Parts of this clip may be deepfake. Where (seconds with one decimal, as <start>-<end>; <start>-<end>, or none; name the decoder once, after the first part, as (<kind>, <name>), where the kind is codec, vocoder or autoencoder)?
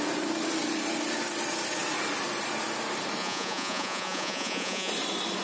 3.2-4.9 (vocoder, Vocos)